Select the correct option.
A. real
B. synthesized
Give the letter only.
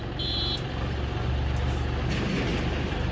A